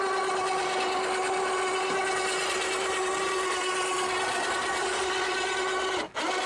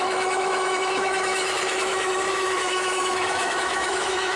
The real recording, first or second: first